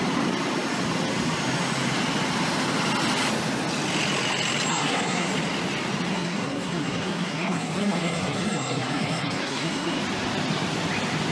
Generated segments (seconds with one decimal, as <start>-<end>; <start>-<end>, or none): 4.7-5.3; 6.1-10.0